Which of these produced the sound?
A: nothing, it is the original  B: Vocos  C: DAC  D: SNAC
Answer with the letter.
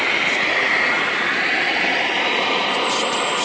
A